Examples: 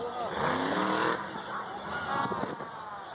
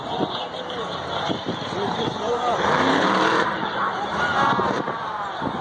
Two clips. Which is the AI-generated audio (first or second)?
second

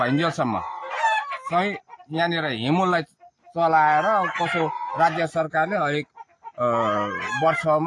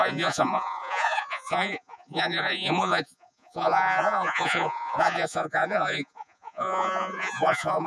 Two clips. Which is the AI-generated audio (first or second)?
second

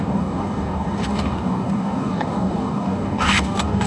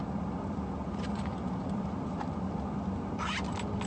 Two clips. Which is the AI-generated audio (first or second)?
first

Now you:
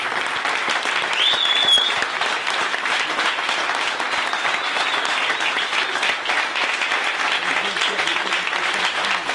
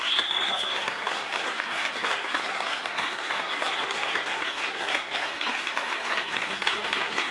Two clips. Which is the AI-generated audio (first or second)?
second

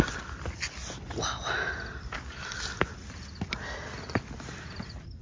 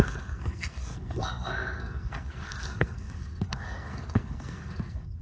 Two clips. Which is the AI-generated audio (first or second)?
second